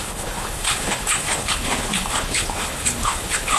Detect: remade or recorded remade